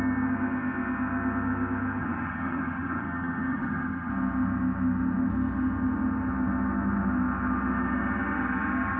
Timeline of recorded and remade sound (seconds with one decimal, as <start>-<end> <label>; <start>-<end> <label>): 0.0-2.0 recorded; 2.0-4.1 remade; 4.1-9.0 recorded